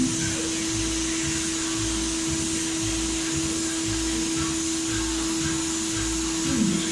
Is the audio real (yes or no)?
yes